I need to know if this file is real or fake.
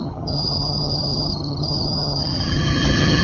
fake